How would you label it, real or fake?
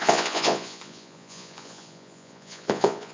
fake